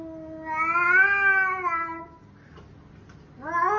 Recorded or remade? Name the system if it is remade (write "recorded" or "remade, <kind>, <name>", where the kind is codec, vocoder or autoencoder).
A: recorded